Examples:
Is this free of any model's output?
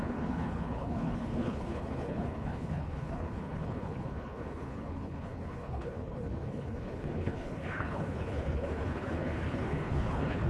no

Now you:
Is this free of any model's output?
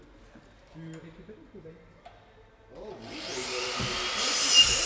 yes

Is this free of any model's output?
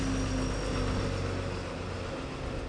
yes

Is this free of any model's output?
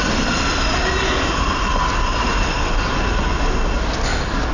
yes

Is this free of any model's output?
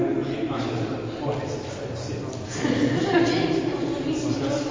yes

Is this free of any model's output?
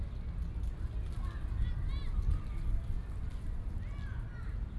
yes